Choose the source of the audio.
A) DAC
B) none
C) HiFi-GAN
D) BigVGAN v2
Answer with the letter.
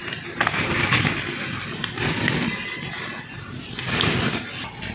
B